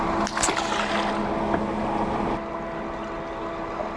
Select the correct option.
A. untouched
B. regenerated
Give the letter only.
A